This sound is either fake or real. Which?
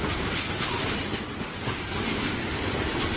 real